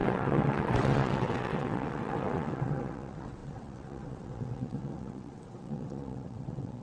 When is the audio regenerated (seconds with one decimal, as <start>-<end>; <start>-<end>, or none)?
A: 0.0-6.8